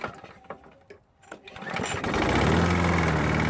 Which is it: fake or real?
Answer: real